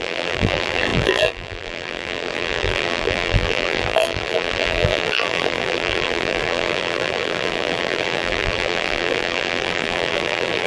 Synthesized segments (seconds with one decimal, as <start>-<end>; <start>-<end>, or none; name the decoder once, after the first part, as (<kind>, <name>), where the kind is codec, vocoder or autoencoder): 0.0-10.7 (vocoder, BigVGAN v2)